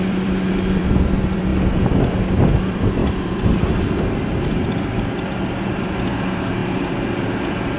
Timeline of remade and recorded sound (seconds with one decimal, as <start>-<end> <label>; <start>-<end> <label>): 0.0-7.8 remade